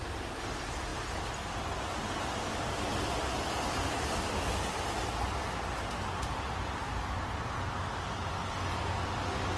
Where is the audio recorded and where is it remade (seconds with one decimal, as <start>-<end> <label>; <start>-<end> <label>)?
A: 0.0-9.6 recorded